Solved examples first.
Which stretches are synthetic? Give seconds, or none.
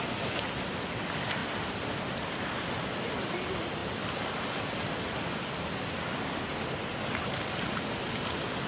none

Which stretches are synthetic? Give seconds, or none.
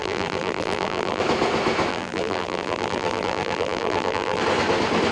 0.0-1.2 (vocoder, BigVGAN v2); 1.9-4.4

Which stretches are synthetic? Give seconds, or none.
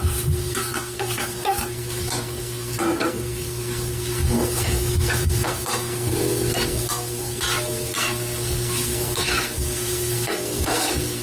0.0-11.2 (codec, SNAC)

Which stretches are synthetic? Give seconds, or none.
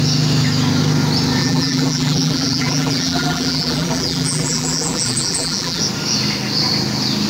1.4-5.8 (vocoder, BigVGAN v2)